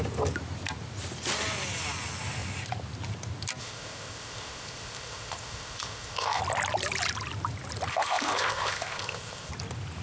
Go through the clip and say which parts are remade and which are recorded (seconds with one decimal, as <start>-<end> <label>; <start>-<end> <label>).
0.0-3.6 recorded; 3.6-6.4 remade; 6.4-7.9 recorded; 7.9-9.5 remade; 9.5-10.0 recorded